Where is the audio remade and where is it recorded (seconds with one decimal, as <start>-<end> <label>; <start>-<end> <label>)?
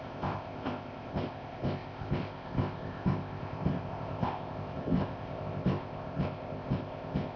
0.0-7.4 remade